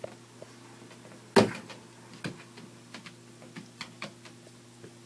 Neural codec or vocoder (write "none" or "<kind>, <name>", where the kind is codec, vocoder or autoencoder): none